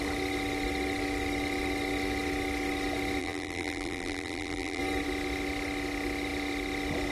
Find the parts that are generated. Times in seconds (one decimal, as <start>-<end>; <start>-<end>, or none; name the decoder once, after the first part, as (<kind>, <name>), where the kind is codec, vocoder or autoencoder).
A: 3.2-4.8 (vocoder, BigVGAN v2)